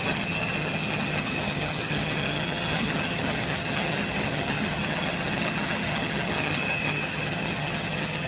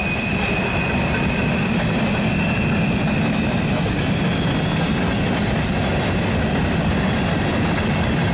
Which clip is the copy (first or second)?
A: first